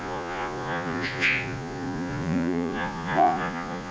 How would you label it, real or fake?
fake